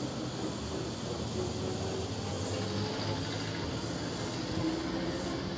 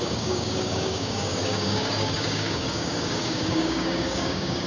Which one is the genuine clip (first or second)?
first